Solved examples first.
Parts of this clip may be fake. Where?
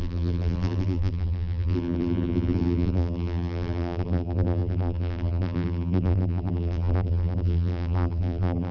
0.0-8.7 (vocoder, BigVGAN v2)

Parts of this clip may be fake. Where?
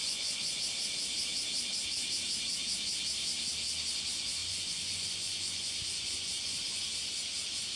0.0-0.6 (vocoder, Vocos); 4.4-6.8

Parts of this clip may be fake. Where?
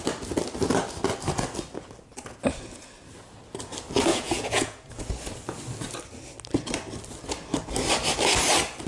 4.1-4.9 (vocoder, Vocos)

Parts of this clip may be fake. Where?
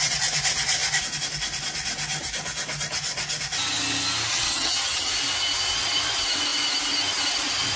4.3-5.1 (vocoder, HiFi-GAN)